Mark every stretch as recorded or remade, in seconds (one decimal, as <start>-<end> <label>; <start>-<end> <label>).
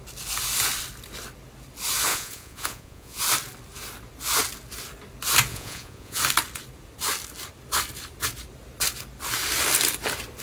0.0-2.1 recorded; 2.1-3.2 remade; 3.2-5.5 recorded; 5.5-6.2 remade; 6.2-10.4 recorded